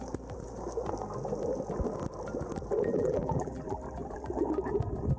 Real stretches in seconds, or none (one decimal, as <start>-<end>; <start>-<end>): 0.0-2.9; 3.8-5.2